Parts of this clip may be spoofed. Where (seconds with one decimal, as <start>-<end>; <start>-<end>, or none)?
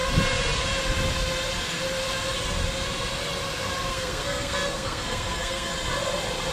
3.9-5.7